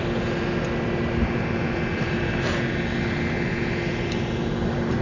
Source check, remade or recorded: recorded